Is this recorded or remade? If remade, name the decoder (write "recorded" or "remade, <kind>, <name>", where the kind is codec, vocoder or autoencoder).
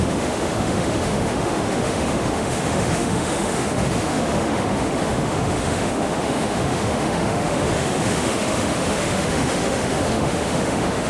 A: remade, autoencoder, DAC-VAE